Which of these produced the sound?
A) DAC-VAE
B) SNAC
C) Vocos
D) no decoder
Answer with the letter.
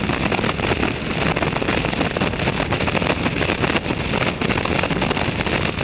D